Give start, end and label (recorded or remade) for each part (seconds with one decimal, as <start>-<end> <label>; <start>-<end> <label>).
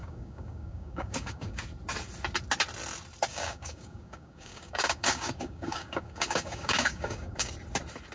0.0-1.6 remade; 1.6-3.3 recorded; 3.3-7.5 remade; 7.5-8.1 recorded